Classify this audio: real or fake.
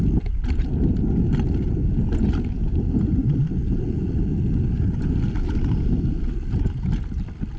real